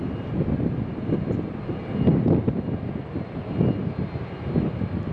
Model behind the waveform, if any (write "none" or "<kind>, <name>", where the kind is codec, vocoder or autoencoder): none